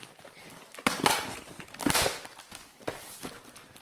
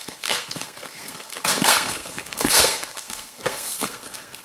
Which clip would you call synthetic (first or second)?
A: second